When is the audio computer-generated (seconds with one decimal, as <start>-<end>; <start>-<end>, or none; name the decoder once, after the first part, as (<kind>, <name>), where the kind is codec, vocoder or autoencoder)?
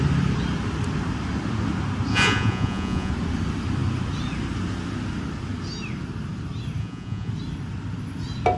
2.1-3.1 (vocoder, Vocos); 6.8-7.3